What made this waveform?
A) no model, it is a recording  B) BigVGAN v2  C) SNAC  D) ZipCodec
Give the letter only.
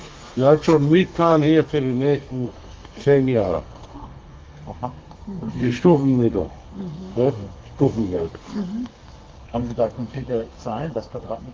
C